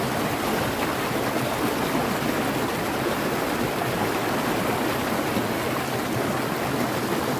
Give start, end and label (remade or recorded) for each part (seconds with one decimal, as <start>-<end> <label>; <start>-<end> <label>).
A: 0.0-2.0 recorded; 2.0-5.3 remade; 5.3-7.4 recorded